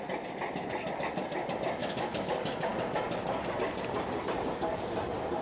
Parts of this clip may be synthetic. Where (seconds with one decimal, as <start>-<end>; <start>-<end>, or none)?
1.8-2.3